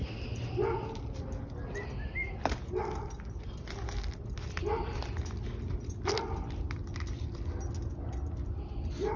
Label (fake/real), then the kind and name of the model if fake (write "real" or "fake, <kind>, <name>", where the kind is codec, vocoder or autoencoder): real